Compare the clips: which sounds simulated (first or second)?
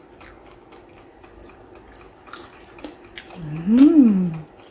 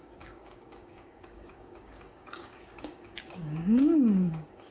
second